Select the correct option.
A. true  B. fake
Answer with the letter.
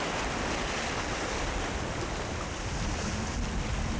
A